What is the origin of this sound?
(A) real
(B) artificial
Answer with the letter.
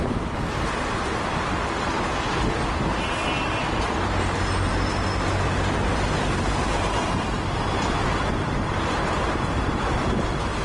A